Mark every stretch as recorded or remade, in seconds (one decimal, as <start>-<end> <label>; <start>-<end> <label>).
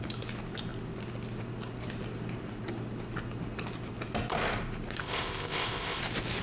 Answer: 0.0-5.0 recorded; 5.0-6.0 remade; 6.0-6.4 recorded